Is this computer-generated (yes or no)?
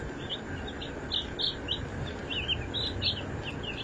no